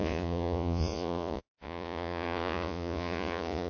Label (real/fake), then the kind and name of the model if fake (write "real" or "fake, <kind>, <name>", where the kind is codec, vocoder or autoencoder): fake, vocoder, Vocos